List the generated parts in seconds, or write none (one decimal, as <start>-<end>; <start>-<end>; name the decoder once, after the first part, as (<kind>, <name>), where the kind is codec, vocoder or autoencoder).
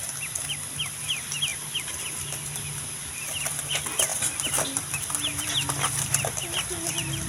1.5-2.2 (vocoder, BigVGAN v2)